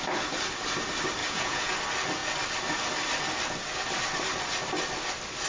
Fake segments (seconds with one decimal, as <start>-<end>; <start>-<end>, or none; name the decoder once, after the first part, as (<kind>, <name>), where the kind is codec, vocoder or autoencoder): 1.2-1.7 (vocoder, Vocos)